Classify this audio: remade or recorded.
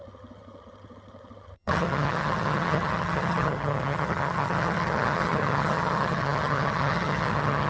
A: remade